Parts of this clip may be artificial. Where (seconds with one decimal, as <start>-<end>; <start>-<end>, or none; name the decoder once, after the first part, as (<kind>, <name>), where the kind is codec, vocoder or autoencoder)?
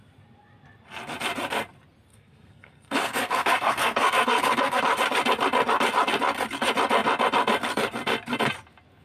2.1-4.8 (codec, SNAC)